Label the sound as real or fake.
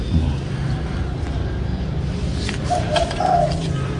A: real